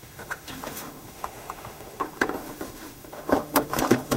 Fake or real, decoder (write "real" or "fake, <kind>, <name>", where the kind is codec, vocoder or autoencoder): fake, autoencoder, DAC-VAE